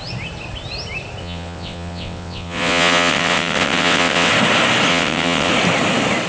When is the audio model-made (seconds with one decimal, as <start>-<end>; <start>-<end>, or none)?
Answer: 1.2-4.3; 4.9-5.5